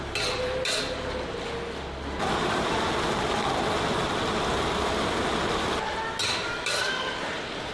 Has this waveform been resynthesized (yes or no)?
no